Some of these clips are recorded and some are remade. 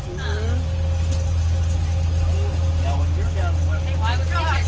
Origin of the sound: recorded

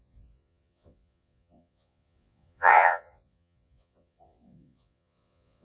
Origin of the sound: remade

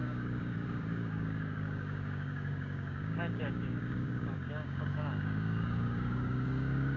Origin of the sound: remade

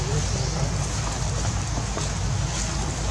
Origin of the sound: recorded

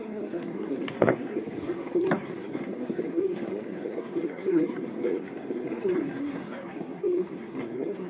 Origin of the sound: remade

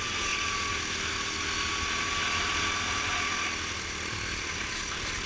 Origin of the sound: recorded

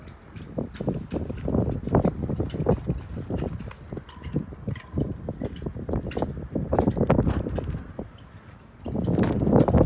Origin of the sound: recorded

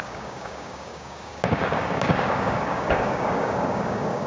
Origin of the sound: remade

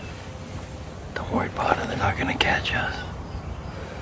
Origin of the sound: remade